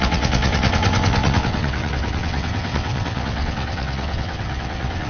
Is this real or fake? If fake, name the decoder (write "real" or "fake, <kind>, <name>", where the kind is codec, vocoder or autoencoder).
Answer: fake, vocoder, WaveNeXt